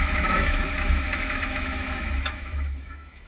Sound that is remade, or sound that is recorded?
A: remade